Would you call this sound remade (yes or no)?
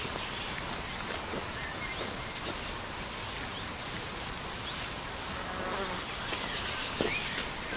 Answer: no